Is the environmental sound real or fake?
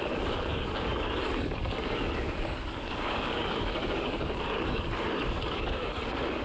fake